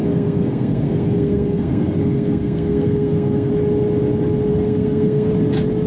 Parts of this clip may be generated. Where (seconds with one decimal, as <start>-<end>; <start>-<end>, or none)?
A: 0.0-3.5; 4.5-5.3